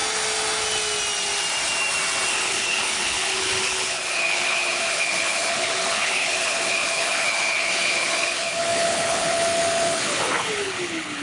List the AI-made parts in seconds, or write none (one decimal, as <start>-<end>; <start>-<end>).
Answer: 2.3-11.2